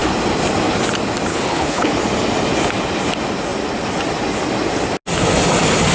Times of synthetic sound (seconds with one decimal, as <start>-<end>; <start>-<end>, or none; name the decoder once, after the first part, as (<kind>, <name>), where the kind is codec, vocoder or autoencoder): 1.3-1.9 (codec, HILCodec)